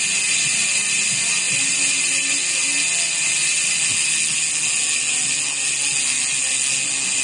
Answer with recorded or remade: recorded